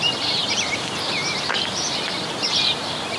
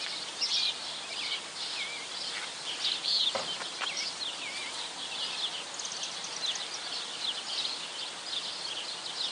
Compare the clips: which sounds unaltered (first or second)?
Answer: second